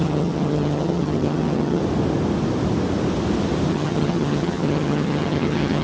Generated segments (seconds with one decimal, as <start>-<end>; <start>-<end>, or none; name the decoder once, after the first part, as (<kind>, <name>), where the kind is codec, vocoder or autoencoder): 0.0-1.8 (vocoder, HiFi-GAN); 3.7-5.8